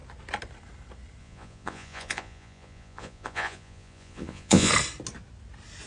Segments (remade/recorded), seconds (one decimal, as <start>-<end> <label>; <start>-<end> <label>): 0.0-1.2 recorded; 1.2-4.7 remade; 4.7-5.9 recorded